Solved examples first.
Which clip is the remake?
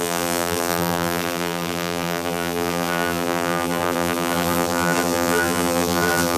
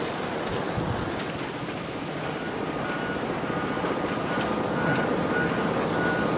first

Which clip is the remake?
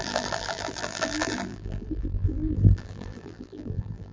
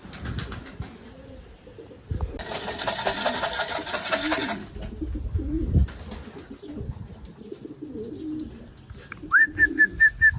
first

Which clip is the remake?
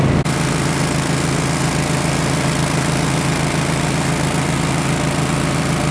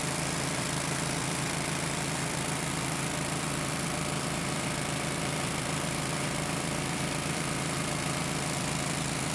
second